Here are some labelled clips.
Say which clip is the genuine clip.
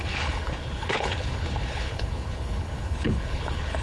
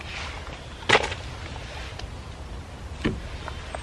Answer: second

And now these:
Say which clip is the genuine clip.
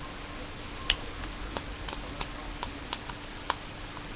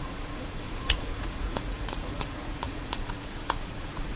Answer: first